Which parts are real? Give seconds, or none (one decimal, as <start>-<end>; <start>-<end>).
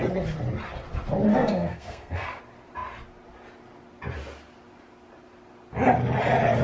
0.0-1.3; 2.4-6.6